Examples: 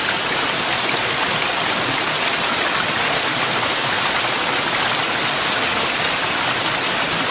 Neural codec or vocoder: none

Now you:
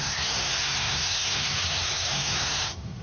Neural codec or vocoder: codec, SNAC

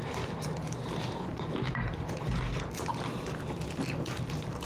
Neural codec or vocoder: none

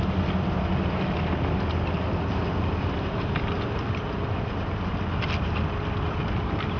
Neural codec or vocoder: none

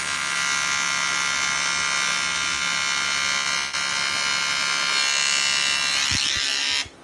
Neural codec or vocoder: none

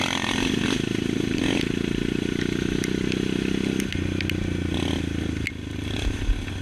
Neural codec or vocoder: none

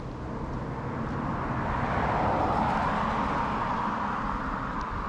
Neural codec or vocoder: none